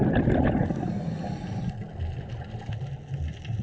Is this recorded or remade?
recorded